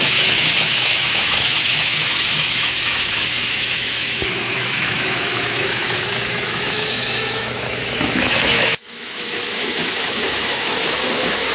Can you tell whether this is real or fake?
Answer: fake